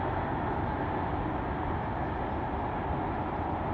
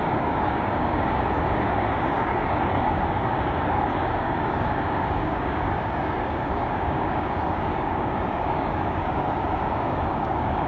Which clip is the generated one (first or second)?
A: second